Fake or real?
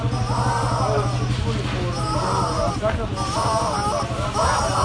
real